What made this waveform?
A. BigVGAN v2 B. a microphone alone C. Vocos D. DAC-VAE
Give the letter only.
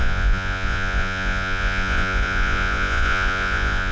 C